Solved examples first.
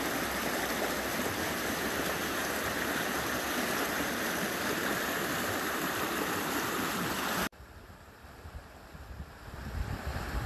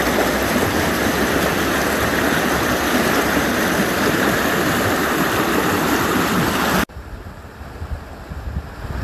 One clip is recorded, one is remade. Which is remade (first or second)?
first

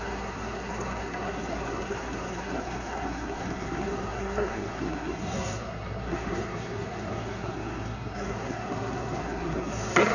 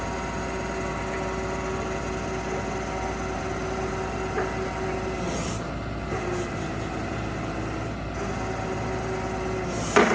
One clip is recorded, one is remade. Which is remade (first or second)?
first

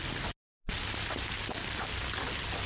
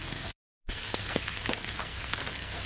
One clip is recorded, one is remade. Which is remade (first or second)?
second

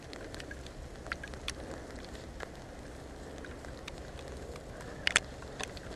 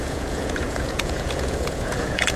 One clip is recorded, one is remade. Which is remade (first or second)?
second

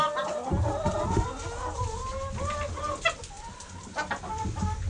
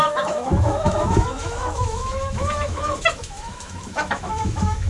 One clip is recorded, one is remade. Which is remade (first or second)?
second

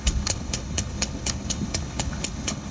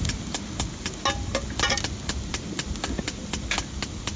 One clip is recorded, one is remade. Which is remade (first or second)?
first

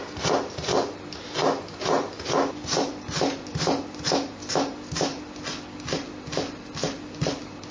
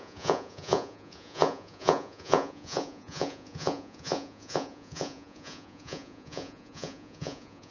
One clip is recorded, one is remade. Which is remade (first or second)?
second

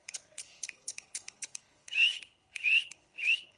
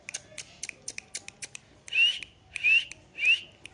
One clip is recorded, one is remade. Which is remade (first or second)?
first